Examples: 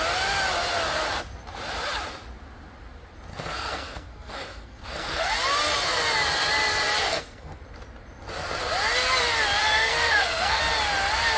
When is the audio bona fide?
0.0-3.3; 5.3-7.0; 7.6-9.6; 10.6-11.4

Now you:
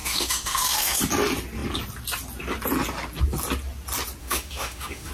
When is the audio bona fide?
1.0-4.2

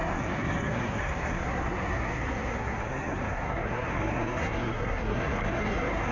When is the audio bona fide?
none

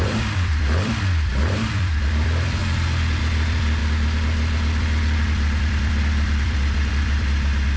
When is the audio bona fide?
2.6-3.2; 3.8-4.8

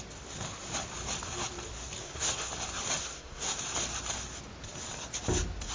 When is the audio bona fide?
0.0-2.0; 2.5-3.0; 3.6-5.7

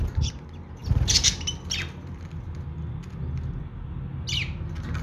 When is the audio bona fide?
0.0-5.0